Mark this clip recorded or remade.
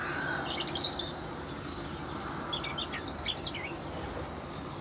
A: recorded